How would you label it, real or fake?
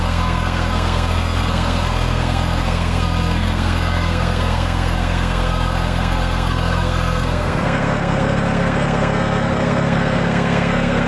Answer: fake